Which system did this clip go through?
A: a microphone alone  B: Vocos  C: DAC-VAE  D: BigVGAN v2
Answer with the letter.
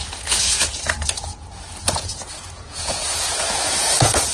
B